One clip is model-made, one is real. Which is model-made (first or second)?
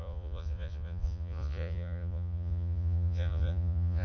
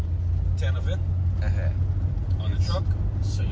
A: first